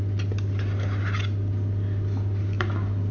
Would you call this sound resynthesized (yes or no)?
no